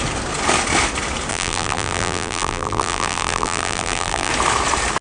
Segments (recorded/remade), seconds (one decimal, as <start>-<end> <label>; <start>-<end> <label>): 0.0-1.3 recorded; 1.3-4.3 remade; 4.3-5.0 recorded